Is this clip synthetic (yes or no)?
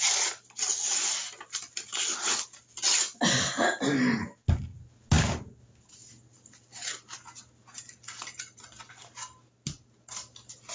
no